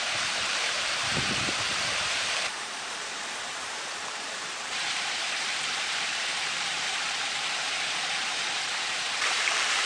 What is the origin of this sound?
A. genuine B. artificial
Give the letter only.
B